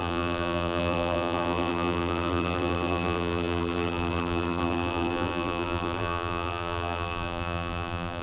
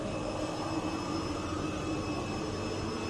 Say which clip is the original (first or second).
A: second